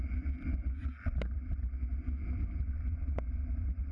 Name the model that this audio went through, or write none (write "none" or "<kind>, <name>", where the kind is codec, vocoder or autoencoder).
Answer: none